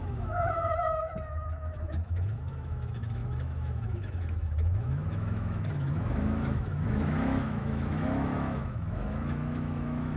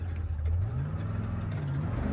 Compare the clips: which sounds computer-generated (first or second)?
first